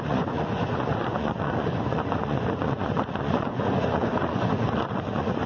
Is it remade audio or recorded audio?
remade